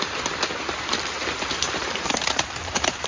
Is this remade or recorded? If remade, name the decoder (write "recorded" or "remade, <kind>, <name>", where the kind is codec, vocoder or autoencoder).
remade, vocoder, BigVGAN v2